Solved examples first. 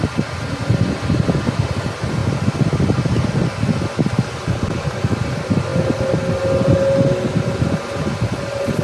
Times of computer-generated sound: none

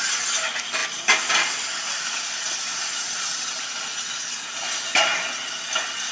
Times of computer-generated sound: none

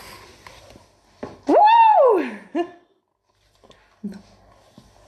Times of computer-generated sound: none

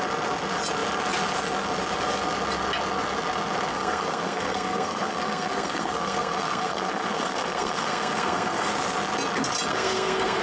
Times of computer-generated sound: 3.7-8.7; 9.7-10.4

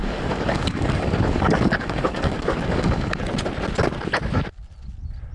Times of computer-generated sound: 0.0-3.2

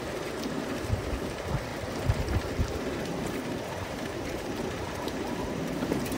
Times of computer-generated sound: 0.0-1.7; 3.3-6.2

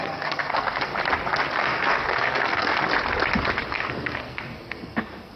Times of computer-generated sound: 0.0-0.9; 1.6-2.7; 3.7-5.4

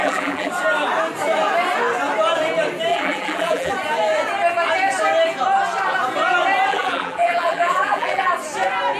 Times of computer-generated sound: 0.0-0.5; 2.9-3.7; 6.7-8.3